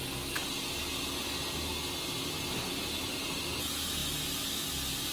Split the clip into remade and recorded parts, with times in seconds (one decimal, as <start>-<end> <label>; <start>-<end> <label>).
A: 0.0-5.1 recorded